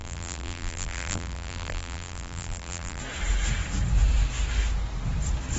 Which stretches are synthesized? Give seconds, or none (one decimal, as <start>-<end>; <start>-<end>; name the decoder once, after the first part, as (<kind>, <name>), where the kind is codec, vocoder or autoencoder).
0.0-3.0 (vocoder, BigVGAN v2)